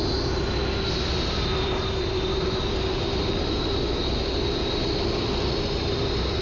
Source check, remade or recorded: recorded